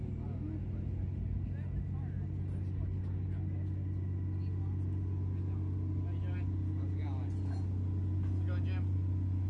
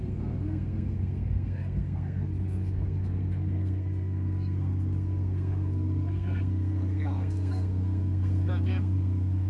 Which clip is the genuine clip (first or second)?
first